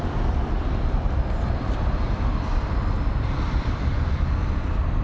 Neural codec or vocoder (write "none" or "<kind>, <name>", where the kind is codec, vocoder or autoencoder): vocoder, BigVGAN v2